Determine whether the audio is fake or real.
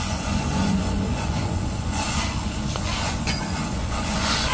fake